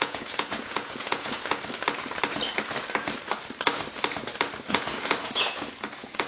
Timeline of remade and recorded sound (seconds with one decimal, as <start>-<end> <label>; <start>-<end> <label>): 0.0-1.4 remade; 1.4-4.7 recorded; 4.7-6.3 remade